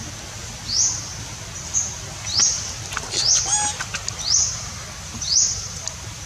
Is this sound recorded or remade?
recorded